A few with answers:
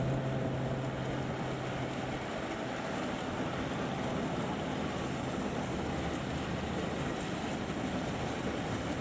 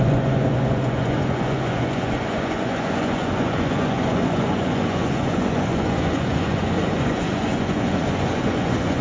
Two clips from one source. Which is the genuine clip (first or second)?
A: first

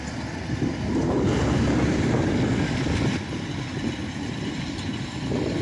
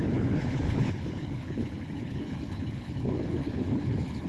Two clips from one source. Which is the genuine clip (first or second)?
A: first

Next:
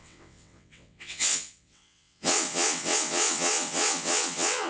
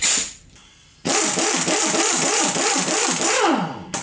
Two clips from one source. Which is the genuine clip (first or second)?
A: second